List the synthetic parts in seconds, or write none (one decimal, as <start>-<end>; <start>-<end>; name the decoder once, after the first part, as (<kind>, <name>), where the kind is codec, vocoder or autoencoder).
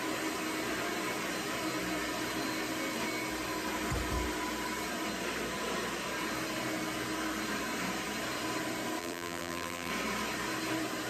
9.0-9.9 (vocoder, BigVGAN v2)